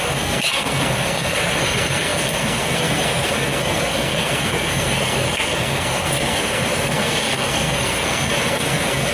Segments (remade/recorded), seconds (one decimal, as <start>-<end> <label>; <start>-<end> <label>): 0.0-9.1 remade